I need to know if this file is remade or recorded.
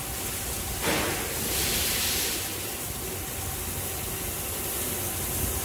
recorded